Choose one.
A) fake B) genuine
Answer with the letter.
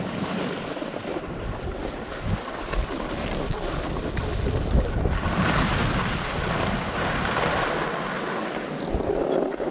B